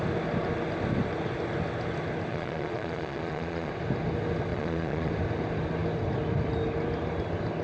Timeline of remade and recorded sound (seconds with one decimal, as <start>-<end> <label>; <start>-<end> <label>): 0.0-2.3 recorded; 2.3-3.7 remade; 3.7-4.5 recorded; 4.5-5.1 remade; 5.1-7.6 recorded

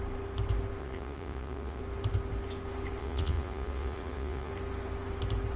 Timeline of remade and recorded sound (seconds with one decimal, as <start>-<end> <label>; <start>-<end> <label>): 0.0-0.8 recorded; 0.8-1.8 remade; 1.8-3.0 recorded; 3.0-4.5 remade; 4.5-5.6 recorded

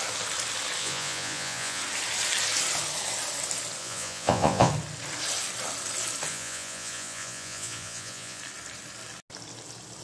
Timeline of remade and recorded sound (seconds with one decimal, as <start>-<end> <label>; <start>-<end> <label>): 0.0-0.8 recorded; 0.8-1.8 remade; 1.8-3.8 recorded; 3.8-4.7 remade; 4.7-6.3 recorded; 6.3-8.4 remade; 8.4-10.0 recorded

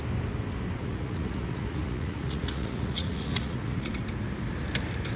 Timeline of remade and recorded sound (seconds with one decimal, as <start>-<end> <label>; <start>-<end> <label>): 0.0-0.8 recorded; 0.8-3.9 remade; 3.9-5.2 recorded

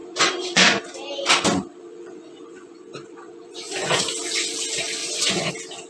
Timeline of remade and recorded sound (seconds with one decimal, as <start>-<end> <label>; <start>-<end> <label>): 0.0-0.8 remade; 0.8-1.9 recorded; 1.9-4.0 remade; 4.0-5.0 recorded; 5.0-5.5 remade; 5.5-5.9 recorded